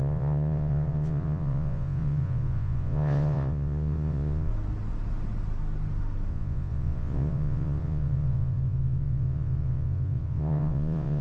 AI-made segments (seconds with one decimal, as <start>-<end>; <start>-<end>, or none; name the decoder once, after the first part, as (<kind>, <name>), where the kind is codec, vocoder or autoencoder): 0.0-4.5 (vocoder, Vocos); 6.3-11.2